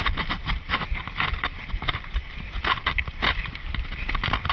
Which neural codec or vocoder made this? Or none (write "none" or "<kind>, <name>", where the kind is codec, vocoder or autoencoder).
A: none